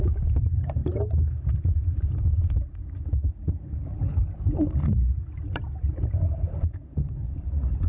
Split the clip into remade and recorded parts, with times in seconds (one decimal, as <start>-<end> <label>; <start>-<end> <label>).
0.0-7.2 recorded; 7.2-7.9 remade